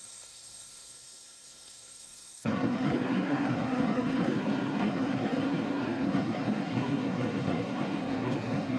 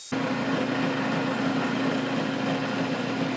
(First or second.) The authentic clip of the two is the second